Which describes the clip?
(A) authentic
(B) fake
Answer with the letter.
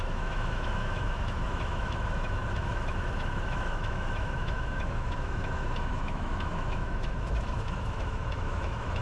B